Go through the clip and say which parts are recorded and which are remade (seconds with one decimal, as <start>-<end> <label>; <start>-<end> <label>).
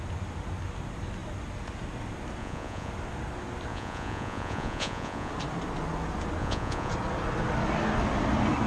0.0-2.4 recorded; 2.4-2.9 remade; 2.9-3.7 recorded; 3.7-5.3 remade; 5.3-6.4 recorded; 6.4-6.9 remade; 6.9-8.7 recorded